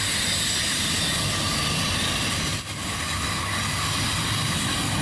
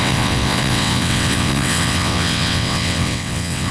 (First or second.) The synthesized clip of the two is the second